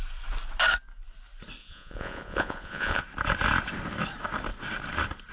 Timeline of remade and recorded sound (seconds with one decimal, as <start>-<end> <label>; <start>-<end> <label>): 0.0-1.6 recorded; 1.6-3.0 remade; 3.0-5.3 recorded